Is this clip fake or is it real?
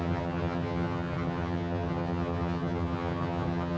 fake